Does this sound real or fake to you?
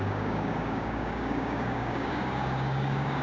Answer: fake